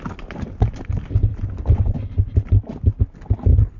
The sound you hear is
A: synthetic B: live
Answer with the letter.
B